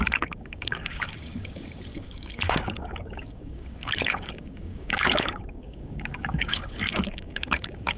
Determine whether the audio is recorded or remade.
remade